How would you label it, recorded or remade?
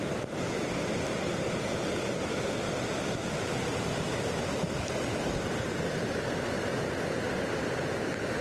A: recorded